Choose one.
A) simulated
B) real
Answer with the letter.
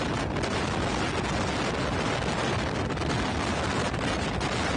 B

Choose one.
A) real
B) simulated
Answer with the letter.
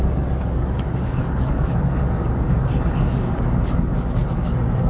B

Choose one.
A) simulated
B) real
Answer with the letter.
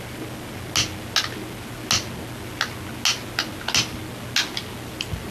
B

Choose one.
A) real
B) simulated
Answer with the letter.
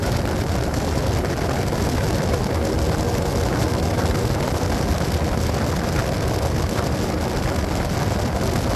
A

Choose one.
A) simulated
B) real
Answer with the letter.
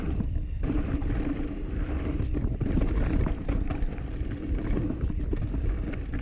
A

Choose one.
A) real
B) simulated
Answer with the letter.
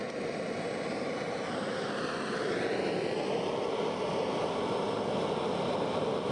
A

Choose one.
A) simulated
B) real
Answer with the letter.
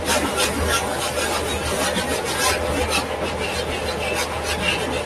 B